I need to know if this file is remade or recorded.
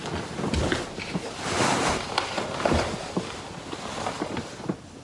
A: recorded